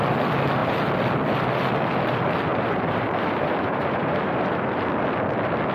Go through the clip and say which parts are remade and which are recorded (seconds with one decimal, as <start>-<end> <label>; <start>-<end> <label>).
0.0-2.5 recorded; 2.5-4.8 remade; 4.8-5.7 recorded